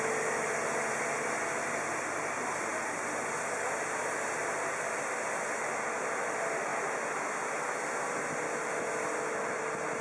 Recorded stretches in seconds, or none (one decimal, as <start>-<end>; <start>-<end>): 0.0-10.0